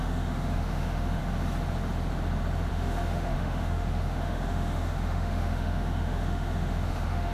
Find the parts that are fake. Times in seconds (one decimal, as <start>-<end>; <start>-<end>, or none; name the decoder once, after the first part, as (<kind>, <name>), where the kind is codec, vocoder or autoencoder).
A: 0.0-1.2 (autoencoder, DAC-VAE); 2.7-7.3